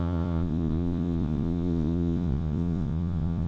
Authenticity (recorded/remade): remade